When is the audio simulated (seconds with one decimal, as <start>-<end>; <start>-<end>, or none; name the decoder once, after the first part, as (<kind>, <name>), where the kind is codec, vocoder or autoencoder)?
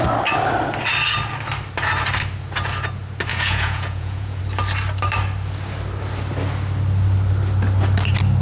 3.3-4.4 (vocoder, Vocos)